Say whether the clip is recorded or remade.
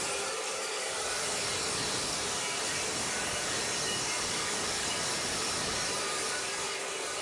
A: remade